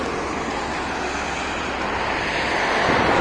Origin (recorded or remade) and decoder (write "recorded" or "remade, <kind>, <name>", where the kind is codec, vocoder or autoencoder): recorded